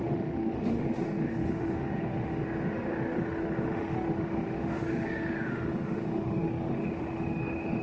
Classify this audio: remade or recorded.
remade